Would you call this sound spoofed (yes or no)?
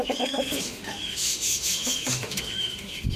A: yes